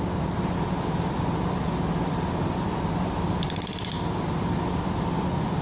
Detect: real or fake real